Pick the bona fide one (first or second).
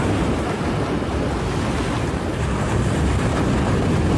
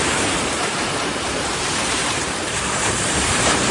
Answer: first